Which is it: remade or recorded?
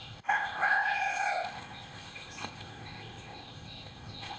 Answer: remade